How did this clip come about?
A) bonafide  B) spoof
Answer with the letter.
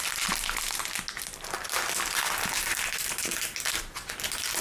A